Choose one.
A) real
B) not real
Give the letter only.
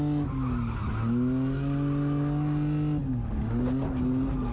A